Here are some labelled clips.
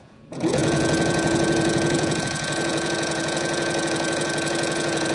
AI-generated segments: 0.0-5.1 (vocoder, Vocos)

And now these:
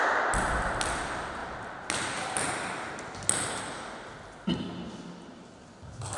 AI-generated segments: none